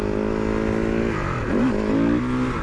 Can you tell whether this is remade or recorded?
recorded